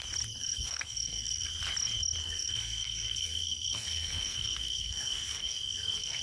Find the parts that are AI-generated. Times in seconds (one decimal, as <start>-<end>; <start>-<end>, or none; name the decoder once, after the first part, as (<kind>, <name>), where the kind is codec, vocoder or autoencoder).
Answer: 0.4-1.5 (codec, SNAC); 2.2-6.2